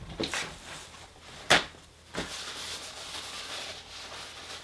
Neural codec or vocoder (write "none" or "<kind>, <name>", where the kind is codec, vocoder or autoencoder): none